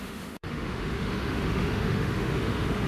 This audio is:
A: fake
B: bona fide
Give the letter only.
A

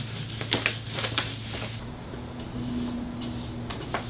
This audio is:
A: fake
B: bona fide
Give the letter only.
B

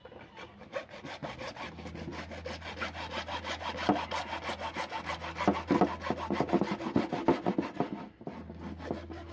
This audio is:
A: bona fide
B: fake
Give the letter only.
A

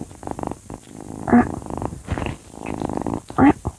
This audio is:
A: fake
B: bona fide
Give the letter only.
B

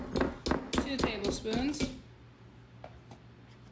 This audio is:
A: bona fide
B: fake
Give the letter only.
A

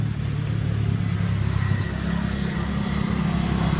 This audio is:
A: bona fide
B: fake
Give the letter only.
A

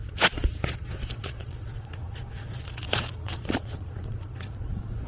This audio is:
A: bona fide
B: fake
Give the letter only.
B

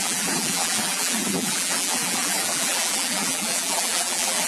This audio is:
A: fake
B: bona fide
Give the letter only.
A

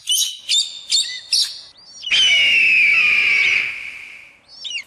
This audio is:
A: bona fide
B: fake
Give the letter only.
A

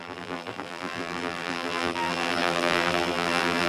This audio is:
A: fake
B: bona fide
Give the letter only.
A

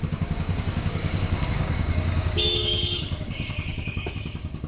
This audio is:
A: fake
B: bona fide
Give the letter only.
A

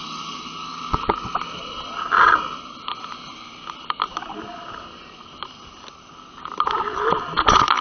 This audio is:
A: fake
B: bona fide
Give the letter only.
B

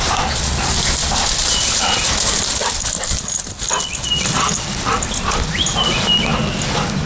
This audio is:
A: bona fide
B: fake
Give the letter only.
A